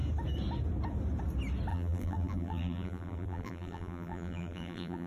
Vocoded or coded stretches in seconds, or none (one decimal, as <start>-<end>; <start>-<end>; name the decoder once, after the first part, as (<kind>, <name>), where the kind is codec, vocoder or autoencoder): 1.7-5.1 (vocoder, BigVGAN v2)